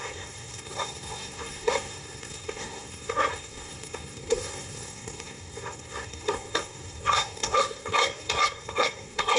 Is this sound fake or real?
fake